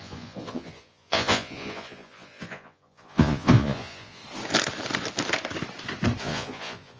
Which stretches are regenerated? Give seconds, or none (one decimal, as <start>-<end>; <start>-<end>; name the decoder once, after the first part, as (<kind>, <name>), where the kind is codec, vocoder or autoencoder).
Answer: 0.0-4.2 (vocoder, Vocos); 6.2-7.0